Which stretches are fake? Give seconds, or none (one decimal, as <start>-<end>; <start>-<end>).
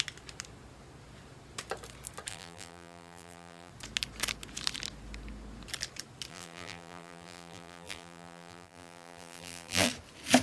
2.3-3.7; 6.3-9.9